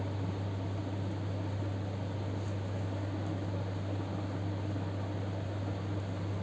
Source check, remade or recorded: recorded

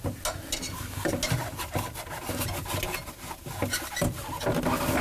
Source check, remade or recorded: recorded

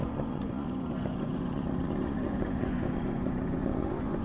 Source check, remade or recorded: remade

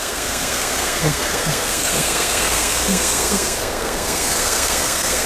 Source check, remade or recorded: remade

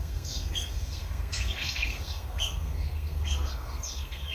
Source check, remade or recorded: remade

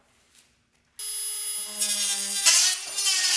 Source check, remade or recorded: recorded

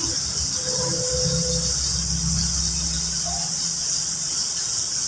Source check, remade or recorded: recorded